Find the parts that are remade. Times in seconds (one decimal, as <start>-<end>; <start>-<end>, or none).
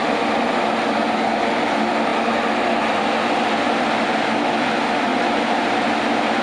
5.1-6.0